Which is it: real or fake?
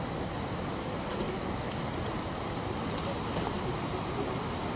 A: real